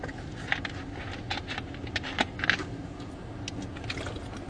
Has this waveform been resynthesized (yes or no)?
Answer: no